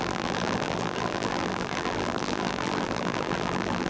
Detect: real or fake fake